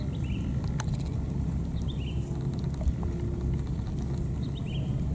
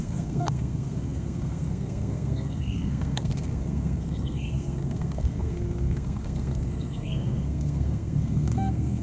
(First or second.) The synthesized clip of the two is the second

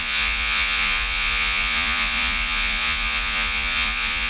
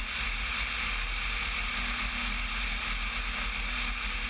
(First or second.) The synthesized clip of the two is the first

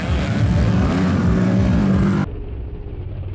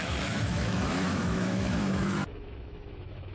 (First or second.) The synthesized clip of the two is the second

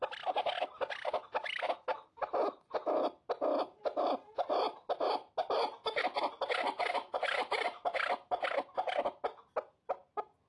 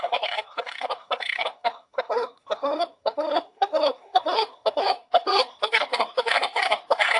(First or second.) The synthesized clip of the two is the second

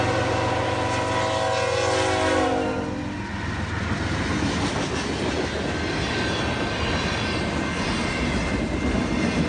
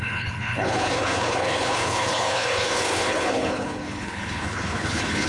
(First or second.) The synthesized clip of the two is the second